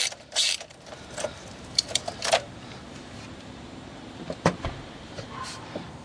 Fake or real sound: fake